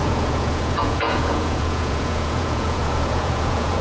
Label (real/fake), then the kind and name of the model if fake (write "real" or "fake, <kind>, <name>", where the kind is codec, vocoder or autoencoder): fake, vocoder, Vocos